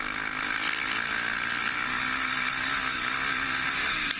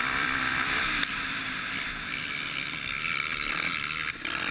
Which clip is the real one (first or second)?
first